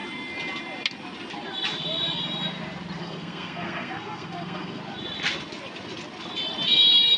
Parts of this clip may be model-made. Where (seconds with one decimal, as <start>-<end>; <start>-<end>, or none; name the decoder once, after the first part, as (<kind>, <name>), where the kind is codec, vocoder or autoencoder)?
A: 3.0-4.8 (codec, SNAC)